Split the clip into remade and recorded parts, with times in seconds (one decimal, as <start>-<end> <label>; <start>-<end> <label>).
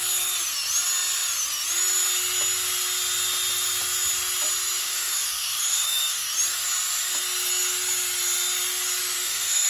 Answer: 0.0-4.8 recorded; 4.8-6.3 remade; 6.3-9.0 recorded; 9.0-9.7 remade